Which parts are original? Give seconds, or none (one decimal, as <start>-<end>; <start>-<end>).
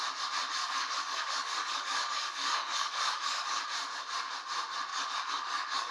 0.0-0.6; 3.6-4.9